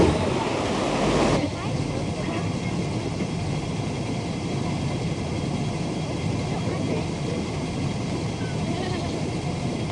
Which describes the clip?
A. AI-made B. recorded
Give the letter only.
B